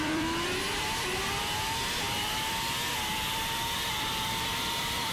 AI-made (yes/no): yes